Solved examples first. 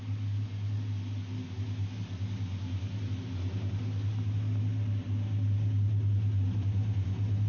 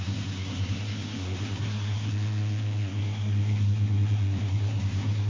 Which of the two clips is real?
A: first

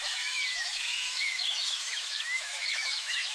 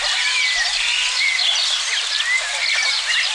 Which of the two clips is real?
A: second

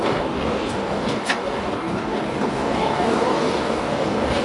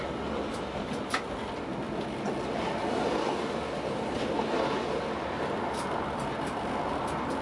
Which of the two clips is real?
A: second